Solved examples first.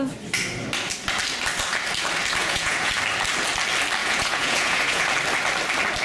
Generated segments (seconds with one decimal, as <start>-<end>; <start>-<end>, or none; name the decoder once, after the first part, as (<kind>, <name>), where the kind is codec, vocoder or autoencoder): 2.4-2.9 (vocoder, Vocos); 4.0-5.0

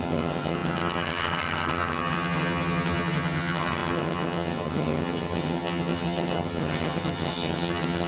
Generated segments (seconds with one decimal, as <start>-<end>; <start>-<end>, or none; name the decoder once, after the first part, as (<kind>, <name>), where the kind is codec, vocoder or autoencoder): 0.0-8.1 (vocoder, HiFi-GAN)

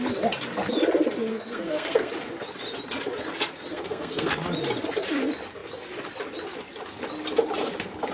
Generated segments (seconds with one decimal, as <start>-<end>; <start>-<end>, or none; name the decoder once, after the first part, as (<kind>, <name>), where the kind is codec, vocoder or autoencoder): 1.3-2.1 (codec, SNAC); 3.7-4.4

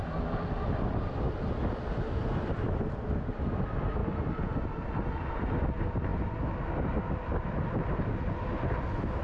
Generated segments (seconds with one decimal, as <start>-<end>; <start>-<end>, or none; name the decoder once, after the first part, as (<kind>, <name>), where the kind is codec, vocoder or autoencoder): none

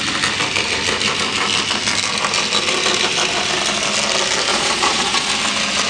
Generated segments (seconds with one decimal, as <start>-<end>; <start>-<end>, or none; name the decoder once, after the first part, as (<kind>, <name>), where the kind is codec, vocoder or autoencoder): 4.5-5.3 (vocoder, Vocos)

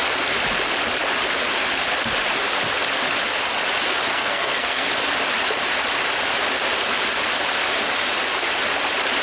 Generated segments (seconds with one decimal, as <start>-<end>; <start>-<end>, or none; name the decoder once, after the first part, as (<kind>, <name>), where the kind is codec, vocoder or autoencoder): 4.1-4.9 (codec, SNAC)

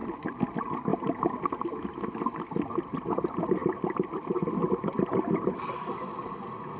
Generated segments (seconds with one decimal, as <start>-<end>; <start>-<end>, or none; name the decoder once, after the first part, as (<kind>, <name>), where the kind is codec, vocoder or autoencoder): none

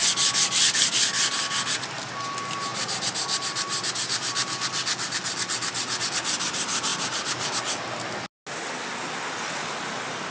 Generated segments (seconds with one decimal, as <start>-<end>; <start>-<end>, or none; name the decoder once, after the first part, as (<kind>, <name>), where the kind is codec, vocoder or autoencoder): none